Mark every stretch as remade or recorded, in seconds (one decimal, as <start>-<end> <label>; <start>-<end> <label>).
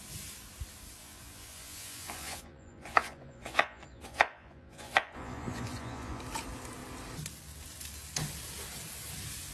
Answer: 0.0-1.0 recorded; 1.0-6.2 remade; 6.2-9.5 recorded